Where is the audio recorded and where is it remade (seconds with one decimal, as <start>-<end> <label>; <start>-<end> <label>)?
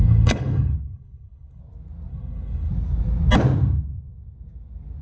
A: 0.0-1.6 remade; 1.6-2.1 recorded; 2.1-2.7 remade; 2.7-5.0 recorded